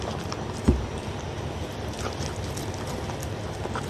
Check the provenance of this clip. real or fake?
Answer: real